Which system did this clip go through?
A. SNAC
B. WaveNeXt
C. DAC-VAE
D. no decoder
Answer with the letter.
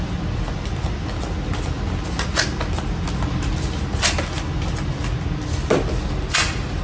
D